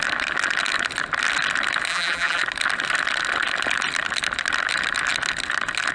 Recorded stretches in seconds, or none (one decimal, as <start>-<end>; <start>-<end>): 0.0-1.9; 2.4-5.9